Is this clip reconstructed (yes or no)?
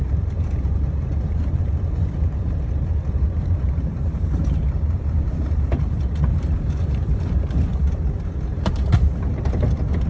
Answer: yes